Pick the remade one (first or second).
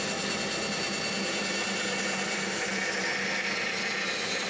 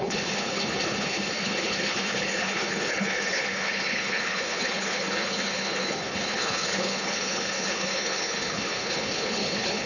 second